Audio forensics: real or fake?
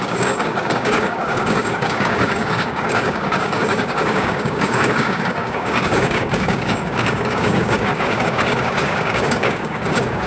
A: fake